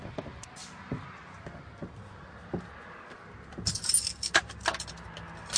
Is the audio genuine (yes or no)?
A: yes